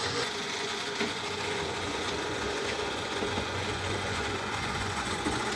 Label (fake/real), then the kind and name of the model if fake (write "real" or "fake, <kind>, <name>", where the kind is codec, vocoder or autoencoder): fake, vocoder, Vocos